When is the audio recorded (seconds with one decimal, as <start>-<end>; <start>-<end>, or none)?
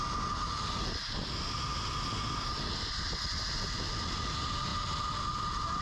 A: 0.0-5.8